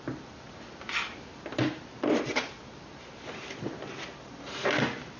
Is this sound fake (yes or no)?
no